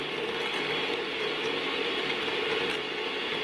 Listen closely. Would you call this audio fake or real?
real